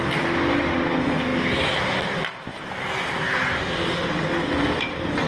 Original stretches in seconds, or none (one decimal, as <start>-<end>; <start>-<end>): 0.0-5.3